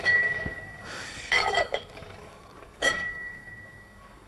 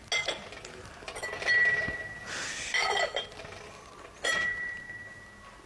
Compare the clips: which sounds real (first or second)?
second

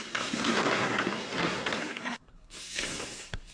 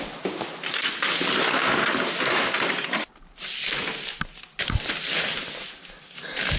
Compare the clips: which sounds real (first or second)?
second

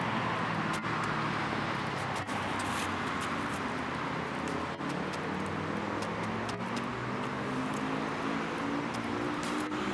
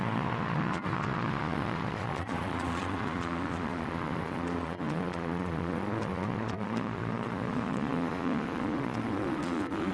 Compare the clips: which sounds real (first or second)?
first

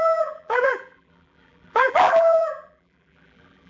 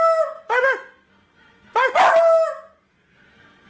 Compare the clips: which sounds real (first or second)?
second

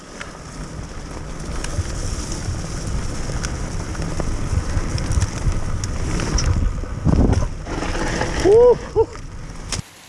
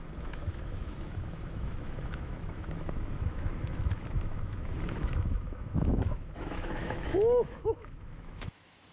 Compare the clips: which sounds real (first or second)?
first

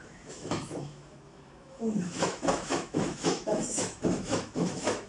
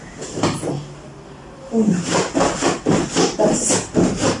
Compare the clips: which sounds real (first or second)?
second